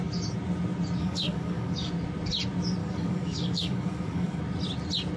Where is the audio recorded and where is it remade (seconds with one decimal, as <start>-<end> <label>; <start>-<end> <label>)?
0.0-1.0 recorded; 1.0-1.9 remade; 1.9-2.8 recorded; 2.8-4.4 remade; 4.4-5.2 recorded